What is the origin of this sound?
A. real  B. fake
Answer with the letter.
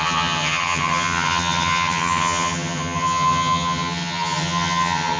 B